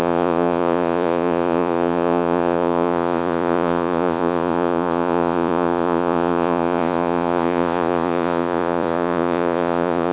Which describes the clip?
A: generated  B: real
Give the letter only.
A